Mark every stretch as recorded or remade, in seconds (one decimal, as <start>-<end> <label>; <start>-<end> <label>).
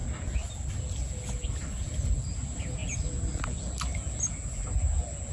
0.0-2.2 recorded; 2.2-2.8 remade; 2.8-5.3 recorded